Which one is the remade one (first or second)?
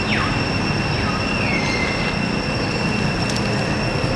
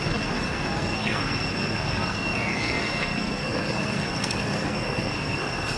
second